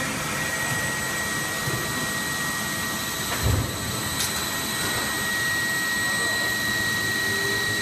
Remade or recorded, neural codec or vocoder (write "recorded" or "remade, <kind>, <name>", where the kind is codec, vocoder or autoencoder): recorded